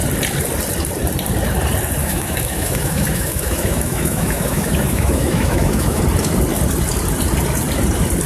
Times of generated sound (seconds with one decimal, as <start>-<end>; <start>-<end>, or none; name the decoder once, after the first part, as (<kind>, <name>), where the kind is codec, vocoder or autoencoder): 2.0-6.0 (autoencoder, DAC-VAE)